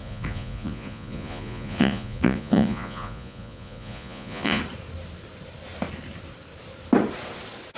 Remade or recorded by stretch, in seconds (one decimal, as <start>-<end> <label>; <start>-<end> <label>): 0.0-4.6 remade; 4.6-7.8 recorded